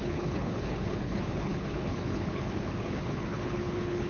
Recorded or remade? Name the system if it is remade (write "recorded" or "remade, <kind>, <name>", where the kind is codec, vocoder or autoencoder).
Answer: remade, codec, HILCodec